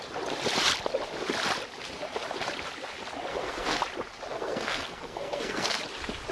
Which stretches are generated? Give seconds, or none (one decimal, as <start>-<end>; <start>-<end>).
3.3-3.8; 4.3-5.8